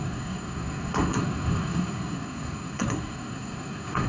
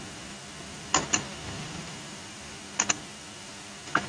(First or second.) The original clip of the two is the second